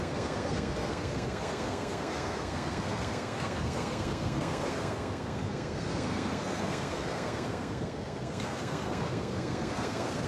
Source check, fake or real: fake